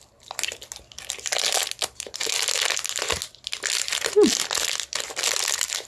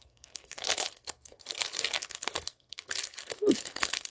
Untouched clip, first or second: first